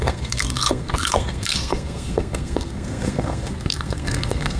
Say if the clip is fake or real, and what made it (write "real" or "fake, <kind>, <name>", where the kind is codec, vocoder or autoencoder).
fake, codec, SNAC